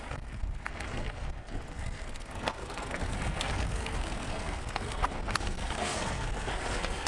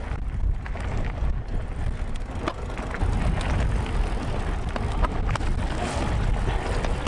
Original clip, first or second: second